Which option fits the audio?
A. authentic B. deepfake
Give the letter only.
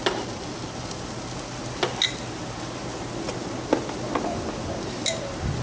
A